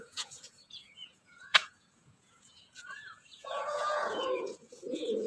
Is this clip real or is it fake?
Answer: fake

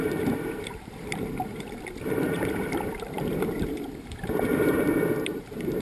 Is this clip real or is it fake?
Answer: fake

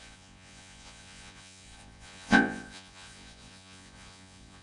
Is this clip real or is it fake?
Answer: fake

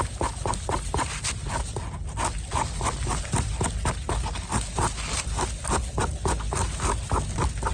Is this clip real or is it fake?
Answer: real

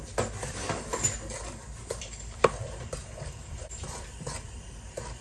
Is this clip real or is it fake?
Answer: fake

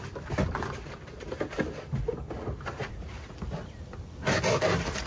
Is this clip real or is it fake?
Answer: real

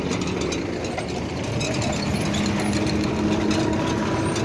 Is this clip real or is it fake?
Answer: real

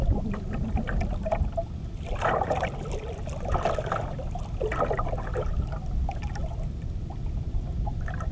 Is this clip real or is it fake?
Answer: real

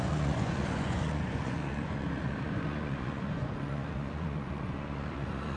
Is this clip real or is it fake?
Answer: fake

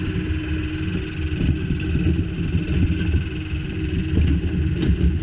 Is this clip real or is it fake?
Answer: real